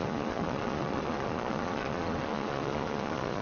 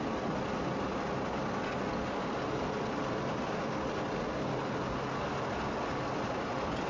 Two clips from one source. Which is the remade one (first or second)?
first